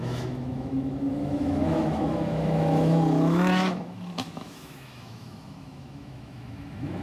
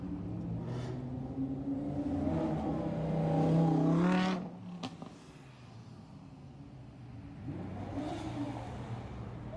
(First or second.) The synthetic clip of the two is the first